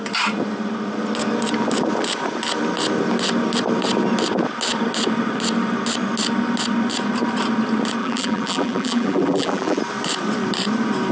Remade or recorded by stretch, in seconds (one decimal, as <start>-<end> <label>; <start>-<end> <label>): 0.0-8.0 recorded; 8.0-9.8 remade; 9.8-11.1 recorded